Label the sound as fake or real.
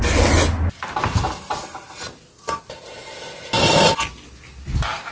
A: real